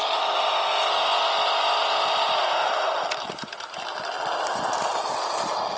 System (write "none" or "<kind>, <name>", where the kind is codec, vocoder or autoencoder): none